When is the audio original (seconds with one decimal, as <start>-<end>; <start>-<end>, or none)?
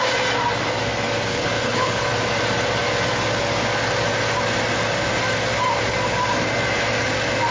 0.0-1.3; 2.1-7.5